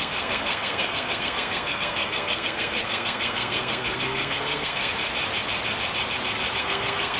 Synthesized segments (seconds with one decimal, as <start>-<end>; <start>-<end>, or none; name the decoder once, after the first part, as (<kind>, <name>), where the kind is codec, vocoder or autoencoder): 0.0-4.9 (codec, SNAC); 6.6-7.2